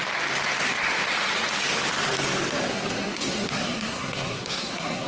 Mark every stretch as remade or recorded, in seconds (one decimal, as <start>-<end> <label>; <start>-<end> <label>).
0.0-2.7 recorded; 2.7-5.1 remade